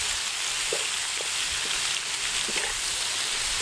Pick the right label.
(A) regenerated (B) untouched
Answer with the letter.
B